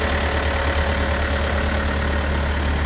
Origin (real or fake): real